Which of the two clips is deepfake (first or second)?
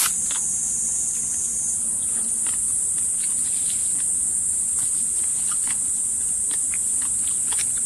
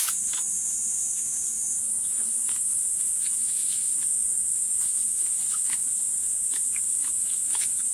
second